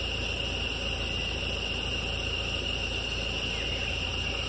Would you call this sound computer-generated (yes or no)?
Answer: no